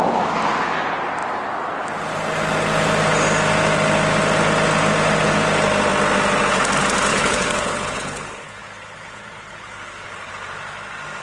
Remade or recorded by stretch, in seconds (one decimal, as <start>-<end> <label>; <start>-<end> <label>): 0.0-7.1 recorded; 7.1-10.3 remade; 10.3-11.2 recorded